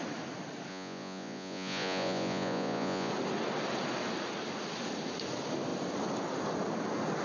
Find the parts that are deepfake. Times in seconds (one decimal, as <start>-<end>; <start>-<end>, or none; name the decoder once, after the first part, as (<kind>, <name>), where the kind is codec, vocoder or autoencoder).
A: 0.7-3.1 (vocoder, Vocos)